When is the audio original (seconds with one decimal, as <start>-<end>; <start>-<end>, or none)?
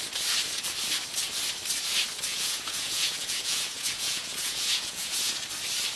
0.0-2.3; 5.3-6.0